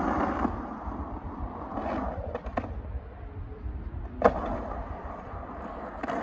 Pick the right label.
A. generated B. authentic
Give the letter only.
B